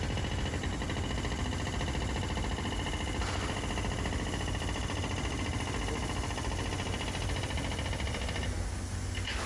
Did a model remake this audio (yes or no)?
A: no